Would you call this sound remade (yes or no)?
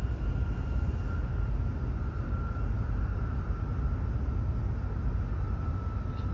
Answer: no